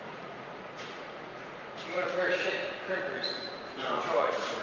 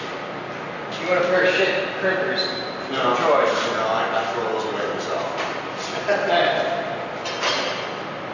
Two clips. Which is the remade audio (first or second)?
first